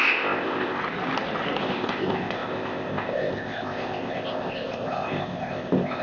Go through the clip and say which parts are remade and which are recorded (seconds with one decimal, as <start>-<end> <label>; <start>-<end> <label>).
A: 0.0-0.8 remade; 0.8-1.6 recorded; 1.6-6.0 remade